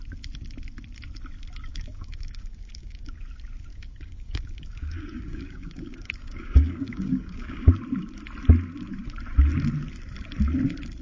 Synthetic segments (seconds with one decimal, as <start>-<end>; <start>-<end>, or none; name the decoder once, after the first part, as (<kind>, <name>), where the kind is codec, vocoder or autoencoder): 1.7-3.2 (codec, DAC); 3.7-7.7